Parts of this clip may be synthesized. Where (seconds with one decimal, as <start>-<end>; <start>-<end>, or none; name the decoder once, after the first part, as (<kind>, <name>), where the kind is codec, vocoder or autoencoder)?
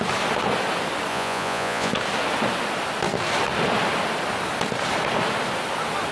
1.1-1.9 (vocoder, Vocos)